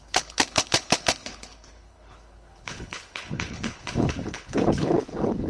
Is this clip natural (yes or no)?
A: no